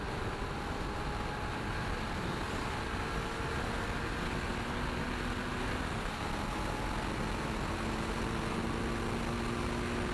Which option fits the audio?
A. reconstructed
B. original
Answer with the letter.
B